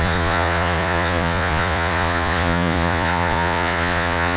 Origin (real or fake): fake